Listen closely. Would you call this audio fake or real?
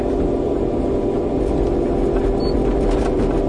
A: real